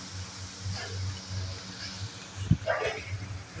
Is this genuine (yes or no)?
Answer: yes